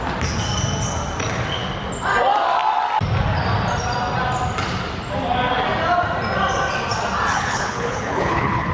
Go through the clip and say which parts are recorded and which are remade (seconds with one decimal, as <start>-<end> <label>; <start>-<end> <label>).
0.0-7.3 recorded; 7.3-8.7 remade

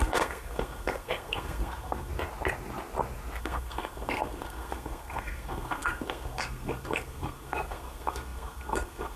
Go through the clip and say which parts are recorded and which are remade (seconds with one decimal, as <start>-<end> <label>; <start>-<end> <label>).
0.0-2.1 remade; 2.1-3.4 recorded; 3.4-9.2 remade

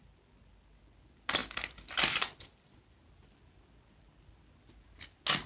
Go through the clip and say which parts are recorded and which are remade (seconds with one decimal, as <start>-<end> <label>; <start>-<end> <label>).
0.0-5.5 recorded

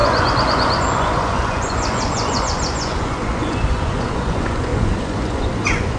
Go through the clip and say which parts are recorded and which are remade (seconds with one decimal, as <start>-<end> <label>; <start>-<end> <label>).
0.0-6.0 remade

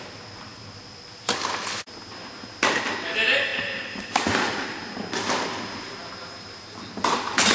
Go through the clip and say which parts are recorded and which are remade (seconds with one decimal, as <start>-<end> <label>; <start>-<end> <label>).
0.0-0.5 recorded; 0.5-1.5 remade; 1.5-3.5 recorded; 3.5-4.8 remade; 4.8-7.5 recorded

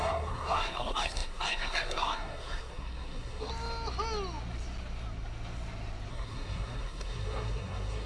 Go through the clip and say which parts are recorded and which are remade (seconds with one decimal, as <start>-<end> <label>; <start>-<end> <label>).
0.0-3.5 remade; 3.5-6.1 recorded; 6.1-8.1 remade

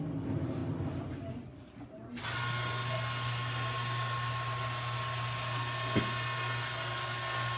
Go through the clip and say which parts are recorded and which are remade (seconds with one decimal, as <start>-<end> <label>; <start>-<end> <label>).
0.0-7.6 recorded